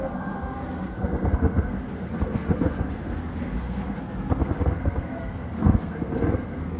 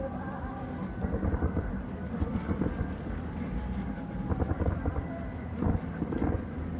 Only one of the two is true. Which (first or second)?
second